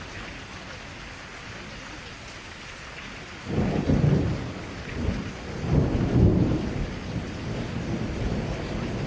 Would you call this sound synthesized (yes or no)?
no